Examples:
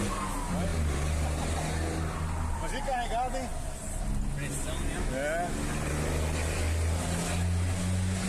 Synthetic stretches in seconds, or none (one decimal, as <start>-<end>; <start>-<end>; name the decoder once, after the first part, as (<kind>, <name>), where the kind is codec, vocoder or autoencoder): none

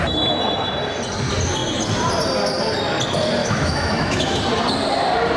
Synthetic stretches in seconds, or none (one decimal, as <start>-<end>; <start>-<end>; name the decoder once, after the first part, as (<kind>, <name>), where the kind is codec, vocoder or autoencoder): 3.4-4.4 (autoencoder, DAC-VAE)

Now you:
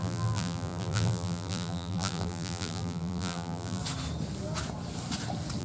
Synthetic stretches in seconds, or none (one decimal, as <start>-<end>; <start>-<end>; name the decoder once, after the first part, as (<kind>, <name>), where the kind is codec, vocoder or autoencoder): 0.0-3.8 (vocoder, BigVGAN v2)

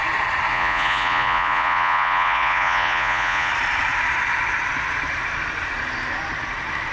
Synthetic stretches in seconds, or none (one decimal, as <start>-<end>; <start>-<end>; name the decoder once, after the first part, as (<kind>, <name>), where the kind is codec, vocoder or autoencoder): 0.5-3.5 (vocoder, Vocos)

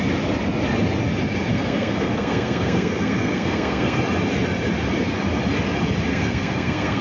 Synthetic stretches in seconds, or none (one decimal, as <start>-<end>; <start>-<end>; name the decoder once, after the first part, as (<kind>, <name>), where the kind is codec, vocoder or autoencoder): 1.5-4.0 (codec, SNAC); 6.1-7.0

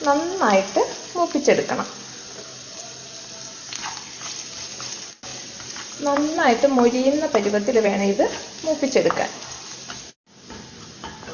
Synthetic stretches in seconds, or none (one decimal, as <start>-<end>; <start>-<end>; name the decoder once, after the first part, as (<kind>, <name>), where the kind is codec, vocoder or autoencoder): 5.3-9.4 (vocoder, BigVGAN v2)

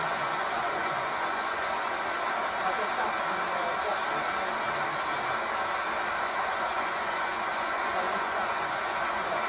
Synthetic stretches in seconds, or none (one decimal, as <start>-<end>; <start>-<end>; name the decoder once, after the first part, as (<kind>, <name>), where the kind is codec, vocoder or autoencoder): 0.0-1.9 (vocoder, Vocos); 6.2-9.5

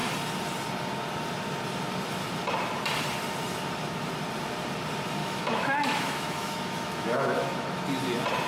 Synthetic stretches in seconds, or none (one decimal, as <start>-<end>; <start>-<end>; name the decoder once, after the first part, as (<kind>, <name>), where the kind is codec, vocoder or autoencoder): 5.2-7.8 (autoencoder, DAC-VAE)